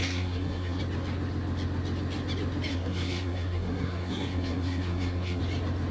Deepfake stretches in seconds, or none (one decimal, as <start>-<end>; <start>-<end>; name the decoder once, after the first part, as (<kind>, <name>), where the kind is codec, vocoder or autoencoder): 0.0-0.8 (codec, SNAC); 2.7-5.4